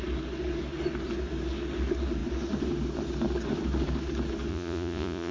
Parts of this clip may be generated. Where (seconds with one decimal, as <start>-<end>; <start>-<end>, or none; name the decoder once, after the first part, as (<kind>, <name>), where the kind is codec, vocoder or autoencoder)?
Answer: 4.5-5.3 (vocoder, Vocos)